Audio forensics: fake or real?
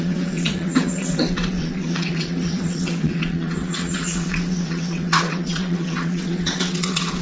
fake